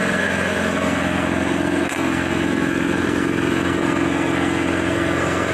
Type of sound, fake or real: fake